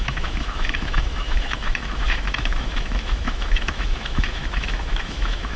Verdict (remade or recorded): remade